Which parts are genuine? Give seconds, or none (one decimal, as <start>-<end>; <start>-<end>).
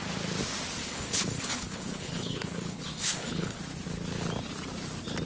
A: 0.0-0.8; 3.6-5.3